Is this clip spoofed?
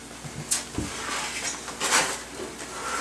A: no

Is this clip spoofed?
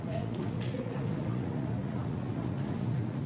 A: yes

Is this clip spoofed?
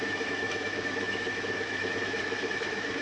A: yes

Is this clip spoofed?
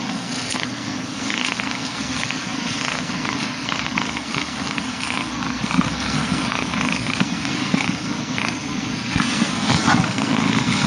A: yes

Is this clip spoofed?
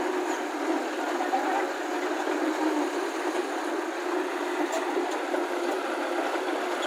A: no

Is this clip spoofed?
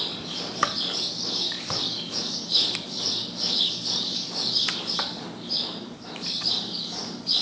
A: yes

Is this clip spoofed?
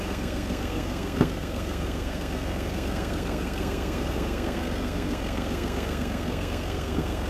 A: yes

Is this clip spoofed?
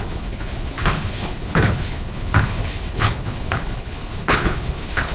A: yes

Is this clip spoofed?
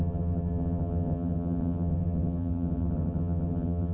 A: yes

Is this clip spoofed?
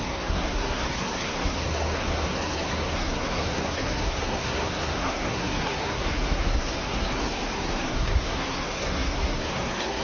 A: yes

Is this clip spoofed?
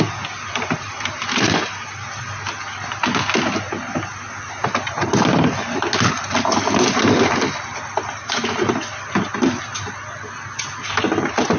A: no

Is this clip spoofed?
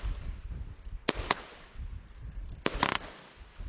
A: no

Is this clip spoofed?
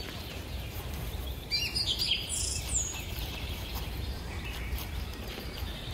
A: yes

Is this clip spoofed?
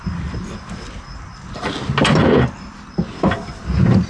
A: no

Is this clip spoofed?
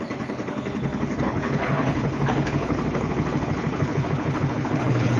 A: yes